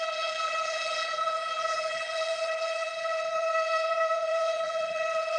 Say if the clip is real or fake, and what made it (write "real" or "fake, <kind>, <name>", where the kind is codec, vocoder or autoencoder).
fake, vocoder, BigVGAN v2